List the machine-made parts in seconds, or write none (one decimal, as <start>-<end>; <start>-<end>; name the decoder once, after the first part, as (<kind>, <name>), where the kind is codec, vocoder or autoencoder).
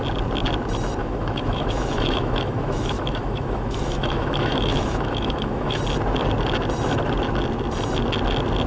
1.0-5.8 (autoencoder, DAC-VAE)